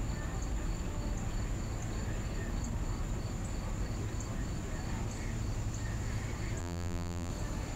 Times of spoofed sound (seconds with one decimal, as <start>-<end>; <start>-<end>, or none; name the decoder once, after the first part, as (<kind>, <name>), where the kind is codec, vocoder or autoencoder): 6.6-7.3 (vocoder, BigVGAN v2)